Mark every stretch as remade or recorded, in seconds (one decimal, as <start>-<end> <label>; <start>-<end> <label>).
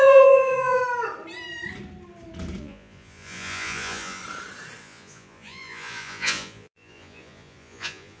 0.0-0.8 remade; 0.8-2.6 recorded; 2.6-4.2 remade; 4.2-4.8 recorded; 4.8-8.2 remade